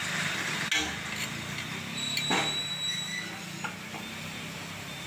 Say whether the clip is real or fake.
real